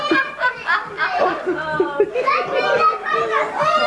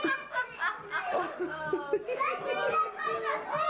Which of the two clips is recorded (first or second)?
second